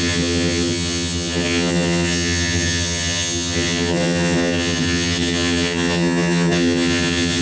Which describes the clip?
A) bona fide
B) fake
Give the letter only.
B